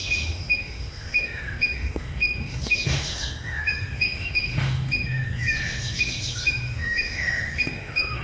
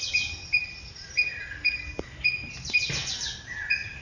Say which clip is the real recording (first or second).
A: second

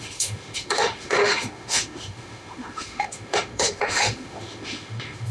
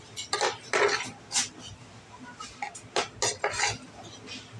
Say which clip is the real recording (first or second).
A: second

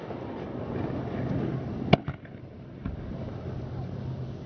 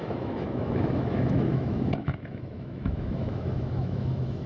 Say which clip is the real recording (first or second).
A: first